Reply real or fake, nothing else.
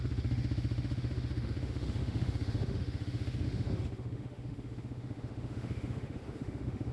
fake